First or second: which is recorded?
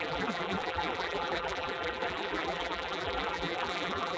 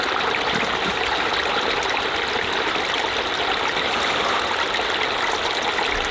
second